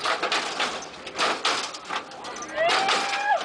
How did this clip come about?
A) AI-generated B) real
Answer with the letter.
B